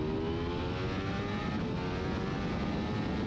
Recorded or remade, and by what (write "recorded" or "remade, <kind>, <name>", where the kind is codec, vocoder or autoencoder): recorded